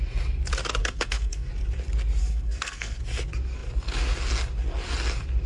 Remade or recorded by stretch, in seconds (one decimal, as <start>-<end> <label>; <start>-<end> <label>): 0.0-0.8 recorded; 0.8-1.5 remade; 1.5-2.2 recorded; 2.2-3.0 remade; 3.0-5.5 recorded